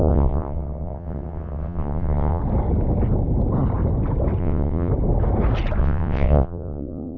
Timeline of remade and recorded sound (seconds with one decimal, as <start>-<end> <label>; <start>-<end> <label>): 0.0-2.4 remade; 2.4-4.4 recorded; 4.4-4.9 remade; 4.9-5.8 recorded; 5.8-7.2 remade